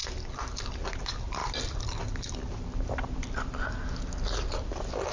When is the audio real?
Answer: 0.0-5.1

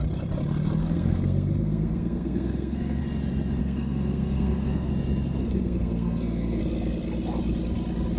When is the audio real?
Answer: 0.0-0.8; 3.0-3.6; 4.9-5.4; 6.6-8.2